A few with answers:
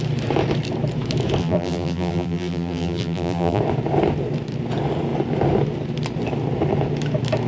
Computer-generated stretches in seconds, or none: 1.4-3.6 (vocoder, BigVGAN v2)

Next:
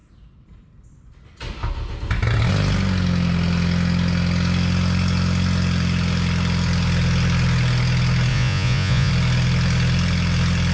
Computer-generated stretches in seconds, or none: 8.3-9.1 (vocoder, Vocos)

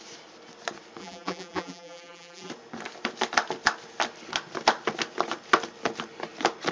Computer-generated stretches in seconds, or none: 1.0-2.5 (vocoder, BigVGAN v2)

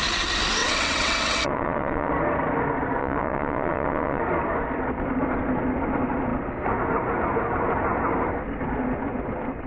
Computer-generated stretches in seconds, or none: 0.6-2.1 (vocoder, WaveNeXt); 3.0-4.2